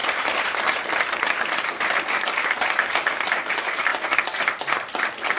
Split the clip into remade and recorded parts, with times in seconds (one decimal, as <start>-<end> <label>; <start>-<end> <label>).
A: 0.0-5.4 recorded